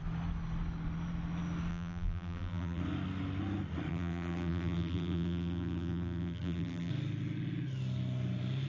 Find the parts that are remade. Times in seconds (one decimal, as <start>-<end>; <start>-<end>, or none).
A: 1.7-2.8; 3.9-6.9